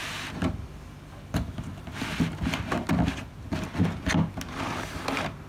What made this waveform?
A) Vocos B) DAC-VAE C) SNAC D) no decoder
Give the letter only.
D